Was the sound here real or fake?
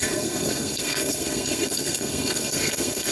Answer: fake